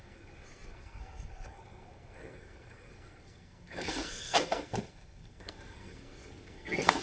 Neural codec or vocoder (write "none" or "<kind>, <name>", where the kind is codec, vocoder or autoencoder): codec, SNAC